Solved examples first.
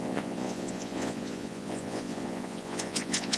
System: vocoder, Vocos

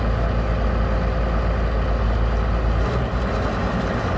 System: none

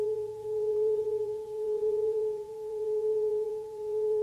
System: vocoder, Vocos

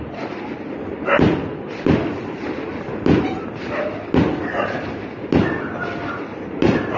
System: none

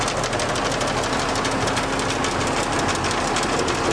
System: none